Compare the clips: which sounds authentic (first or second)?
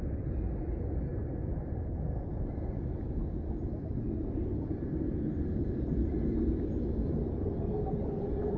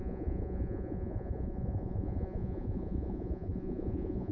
first